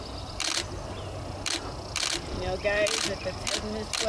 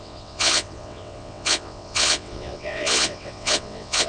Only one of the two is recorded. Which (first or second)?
first